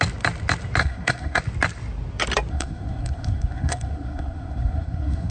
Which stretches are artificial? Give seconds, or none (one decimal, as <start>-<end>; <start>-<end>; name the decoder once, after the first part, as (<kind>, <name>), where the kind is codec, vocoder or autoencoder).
0.8-1.4 (codec, SNAC); 2.5-5.3